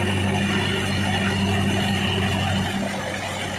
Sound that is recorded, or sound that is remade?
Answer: recorded